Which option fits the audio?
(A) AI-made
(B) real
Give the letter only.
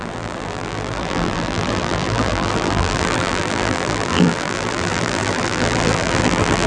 A